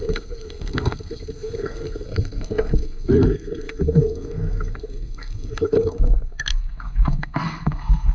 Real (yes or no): no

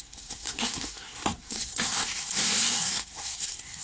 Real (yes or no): no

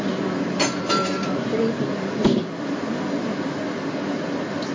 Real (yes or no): yes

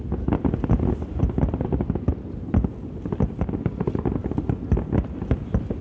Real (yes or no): yes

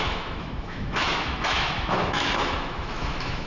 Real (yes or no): no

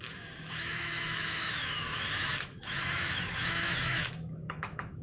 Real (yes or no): no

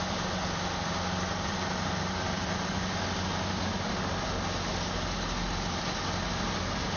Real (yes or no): yes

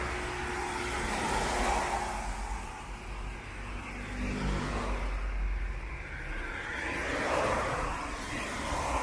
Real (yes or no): yes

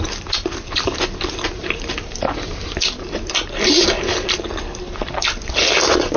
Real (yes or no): yes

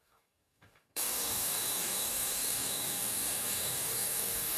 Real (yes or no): no